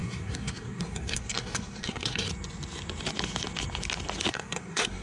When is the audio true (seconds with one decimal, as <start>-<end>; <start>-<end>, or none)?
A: 2.3-4.3